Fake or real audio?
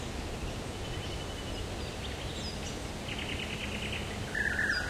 real